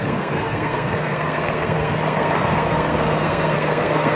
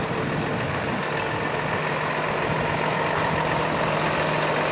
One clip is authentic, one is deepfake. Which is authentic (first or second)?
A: second